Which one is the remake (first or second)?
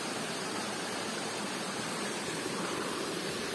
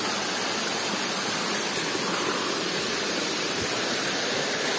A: first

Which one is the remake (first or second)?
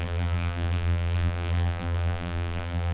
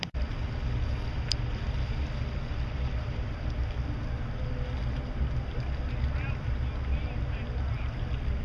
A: first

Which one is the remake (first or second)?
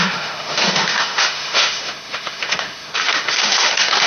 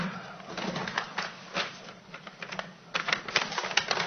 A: first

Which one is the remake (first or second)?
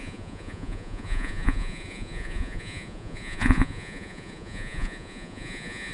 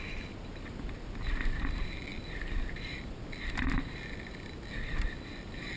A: first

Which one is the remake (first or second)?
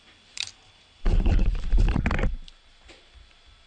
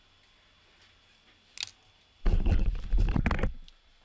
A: first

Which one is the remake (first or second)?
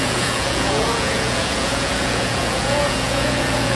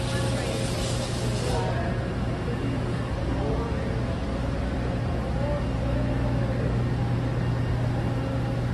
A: first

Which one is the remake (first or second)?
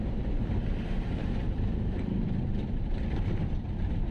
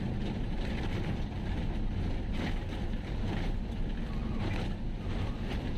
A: first